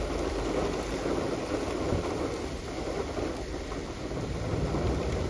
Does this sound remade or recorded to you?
recorded